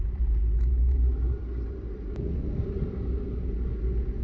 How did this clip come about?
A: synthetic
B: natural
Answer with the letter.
B